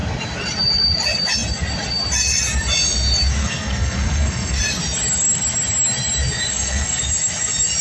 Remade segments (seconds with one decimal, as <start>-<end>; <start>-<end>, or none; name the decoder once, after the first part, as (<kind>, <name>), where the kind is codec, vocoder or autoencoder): 3.4-4.6 (codec, SNAC); 6.5-7.0